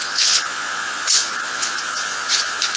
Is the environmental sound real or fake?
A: fake